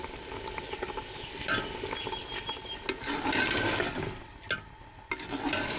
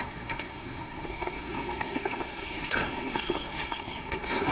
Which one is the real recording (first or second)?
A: first